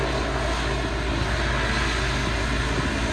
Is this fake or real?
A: real